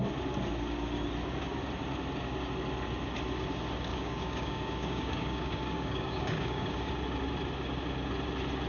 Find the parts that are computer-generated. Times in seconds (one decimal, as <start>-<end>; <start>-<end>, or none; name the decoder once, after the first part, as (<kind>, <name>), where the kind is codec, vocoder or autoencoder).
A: 3.9-6.9 (codec, DAC)